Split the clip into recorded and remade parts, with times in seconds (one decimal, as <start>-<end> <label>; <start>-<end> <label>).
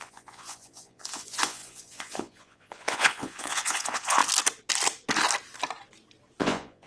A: 0.0-4.2 remade; 4.2-6.4 recorded; 6.4-6.9 remade